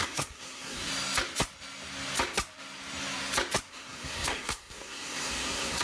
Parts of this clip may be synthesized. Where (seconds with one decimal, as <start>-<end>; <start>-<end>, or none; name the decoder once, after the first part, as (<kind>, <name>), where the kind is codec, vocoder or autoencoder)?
0.0-0.9 (codec, SNAC); 3.7-5.8